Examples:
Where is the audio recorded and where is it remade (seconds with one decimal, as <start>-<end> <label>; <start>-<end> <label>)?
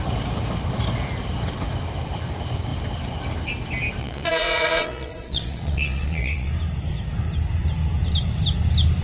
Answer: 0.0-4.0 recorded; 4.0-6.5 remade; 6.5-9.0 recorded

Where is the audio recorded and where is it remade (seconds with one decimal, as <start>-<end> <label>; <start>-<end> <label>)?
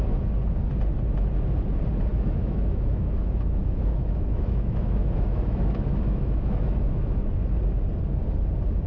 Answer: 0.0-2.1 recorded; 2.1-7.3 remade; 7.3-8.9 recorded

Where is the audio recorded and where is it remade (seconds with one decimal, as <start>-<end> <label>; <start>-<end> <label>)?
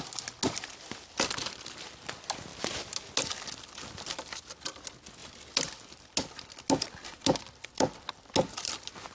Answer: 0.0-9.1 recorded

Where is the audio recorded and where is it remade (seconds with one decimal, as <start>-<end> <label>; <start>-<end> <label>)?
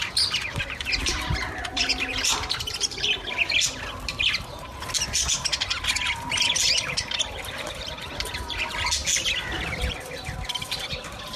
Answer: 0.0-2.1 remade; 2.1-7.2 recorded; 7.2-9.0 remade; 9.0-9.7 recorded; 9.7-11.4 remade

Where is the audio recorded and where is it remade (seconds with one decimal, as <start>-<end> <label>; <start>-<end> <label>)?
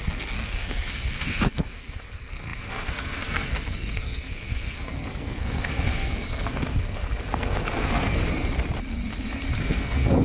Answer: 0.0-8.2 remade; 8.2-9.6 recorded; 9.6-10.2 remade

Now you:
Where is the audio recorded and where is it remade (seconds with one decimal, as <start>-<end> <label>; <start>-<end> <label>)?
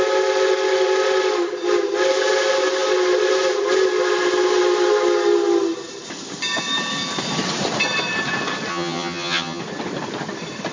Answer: 0.0-8.7 recorded; 8.7-9.6 remade; 9.6-10.7 recorded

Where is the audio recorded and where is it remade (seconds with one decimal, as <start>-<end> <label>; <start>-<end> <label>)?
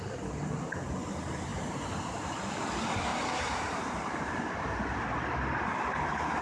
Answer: 0.0-1.5 recorded; 1.5-2.5 remade; 2.5-3.1 recorded; 3.1-5.0 remade; 5.0-6.4 recorded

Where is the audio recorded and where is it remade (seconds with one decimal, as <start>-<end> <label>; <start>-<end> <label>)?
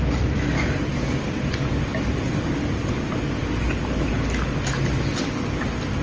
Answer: 0.0-6.0 recorded